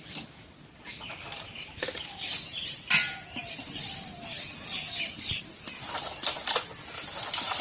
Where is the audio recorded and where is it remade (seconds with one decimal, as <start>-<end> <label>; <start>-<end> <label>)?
0.0-7.6 recorded